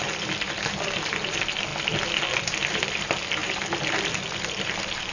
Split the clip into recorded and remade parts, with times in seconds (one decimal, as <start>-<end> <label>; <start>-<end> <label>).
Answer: 0.0-1.7 remade; 1.7-2.7 recorded; 2.7-5.1 remade